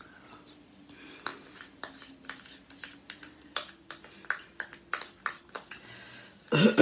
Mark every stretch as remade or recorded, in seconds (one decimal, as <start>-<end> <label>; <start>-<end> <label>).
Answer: 0.0-6.8 recorded